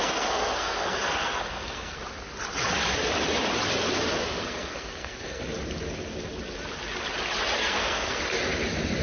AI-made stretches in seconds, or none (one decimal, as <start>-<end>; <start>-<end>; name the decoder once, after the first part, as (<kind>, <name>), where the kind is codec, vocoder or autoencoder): 0.0-2.0 (codec, SNAC); 4.4-5.4; 7.6-8.2